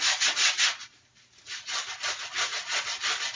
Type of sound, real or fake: real